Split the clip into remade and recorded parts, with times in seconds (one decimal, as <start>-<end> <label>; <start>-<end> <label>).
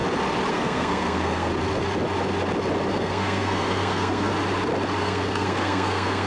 0.0-0.5 recorded; 0.5-1.5 remade; 1.5-2.9 recorded; 2.9-4.3 remade; 4.3-5.0 recorded; 5.0-6.3 remade